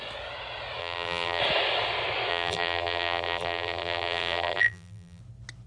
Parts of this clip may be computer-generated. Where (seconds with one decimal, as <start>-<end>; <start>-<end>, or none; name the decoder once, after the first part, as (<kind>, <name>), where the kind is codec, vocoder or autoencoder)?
0.8-1.4 (vocoder, BigVGAN v2); 2.3-5.2